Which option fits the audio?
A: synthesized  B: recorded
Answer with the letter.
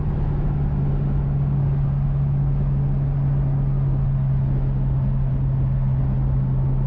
B